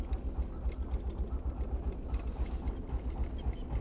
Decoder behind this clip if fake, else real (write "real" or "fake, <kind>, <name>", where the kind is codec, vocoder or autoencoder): real